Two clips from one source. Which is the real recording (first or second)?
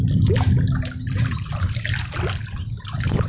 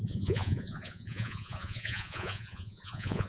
first